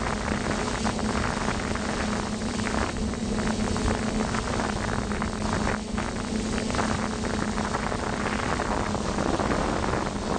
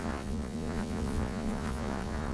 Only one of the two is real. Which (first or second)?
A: first